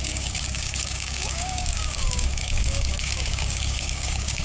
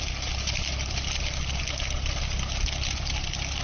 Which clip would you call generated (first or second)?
first